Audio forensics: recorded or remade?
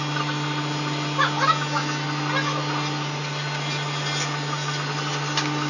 recorded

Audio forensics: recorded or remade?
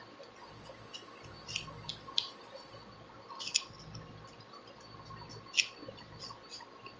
recorded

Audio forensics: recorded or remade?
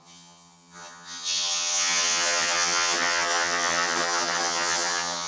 remade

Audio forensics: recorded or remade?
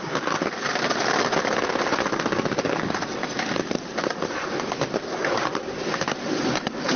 recorded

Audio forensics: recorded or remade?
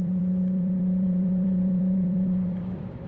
remade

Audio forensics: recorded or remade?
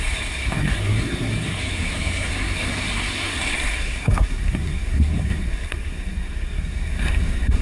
remade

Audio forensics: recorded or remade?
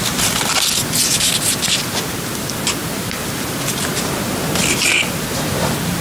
recorded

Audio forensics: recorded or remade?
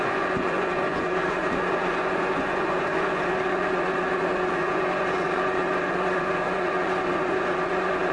remade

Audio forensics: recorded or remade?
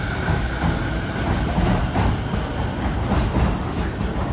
recorded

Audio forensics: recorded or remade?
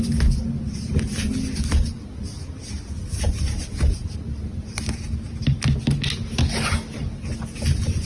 recorded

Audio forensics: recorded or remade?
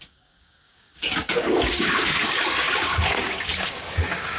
remade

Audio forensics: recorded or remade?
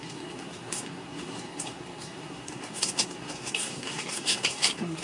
remade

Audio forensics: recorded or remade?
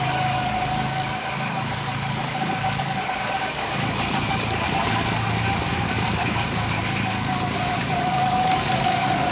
remade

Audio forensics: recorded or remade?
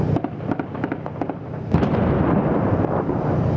recorded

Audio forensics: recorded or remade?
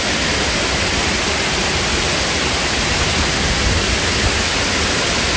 recorded